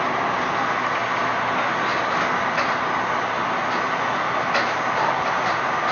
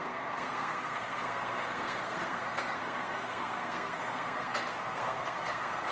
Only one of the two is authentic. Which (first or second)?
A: first